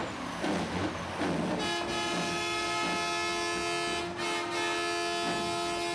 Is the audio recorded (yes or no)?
yes